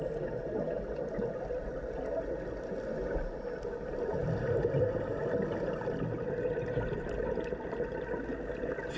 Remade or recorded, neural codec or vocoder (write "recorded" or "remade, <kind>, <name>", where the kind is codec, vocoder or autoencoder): recorded